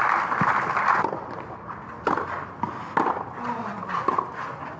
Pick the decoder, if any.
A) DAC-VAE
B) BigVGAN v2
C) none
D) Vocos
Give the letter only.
C